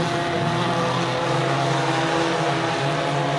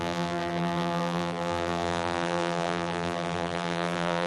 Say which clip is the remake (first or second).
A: second